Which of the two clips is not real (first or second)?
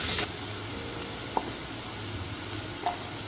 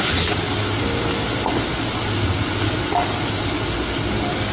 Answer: first